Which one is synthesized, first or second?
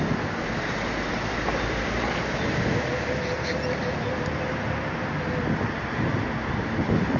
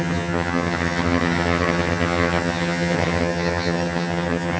second